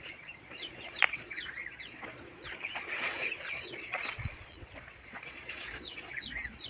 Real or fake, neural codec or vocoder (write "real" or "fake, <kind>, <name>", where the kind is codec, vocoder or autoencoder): fake, vocoder, Vocos